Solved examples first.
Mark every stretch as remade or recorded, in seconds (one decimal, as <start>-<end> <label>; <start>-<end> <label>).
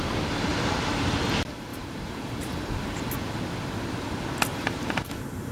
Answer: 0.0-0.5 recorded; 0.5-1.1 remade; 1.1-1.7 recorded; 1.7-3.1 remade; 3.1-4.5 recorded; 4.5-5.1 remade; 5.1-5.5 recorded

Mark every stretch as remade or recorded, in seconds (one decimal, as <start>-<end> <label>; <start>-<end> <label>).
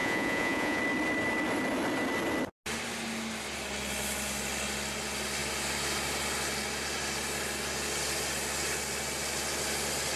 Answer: 0.0-0.8 remade; 0.8-10.2 recorded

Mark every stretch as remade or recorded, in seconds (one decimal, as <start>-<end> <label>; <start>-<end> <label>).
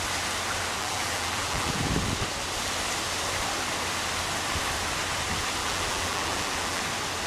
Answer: 0.0-0.8 recorded; 0.8-1.9 remade; 1.9-5.6 recorded; 5.6-6.8 remade; 6.8-7.3 recorded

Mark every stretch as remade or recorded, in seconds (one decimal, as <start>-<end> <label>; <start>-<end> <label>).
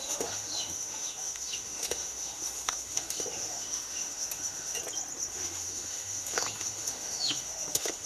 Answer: 0.0-4.8 remade; 4.8-5.3 recorded; 5.3-8.1 remade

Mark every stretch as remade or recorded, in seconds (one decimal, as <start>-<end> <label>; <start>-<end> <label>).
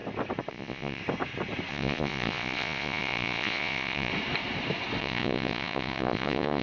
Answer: 0.0-0.5 recorded; 0.5-1.0 remade; 1.0-1.7 recorded; 1.7-4.1 remade; 4.1-5.0 recorded; 5.0-6.6 remade